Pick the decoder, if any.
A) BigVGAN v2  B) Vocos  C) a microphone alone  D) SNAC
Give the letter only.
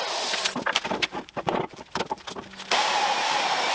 C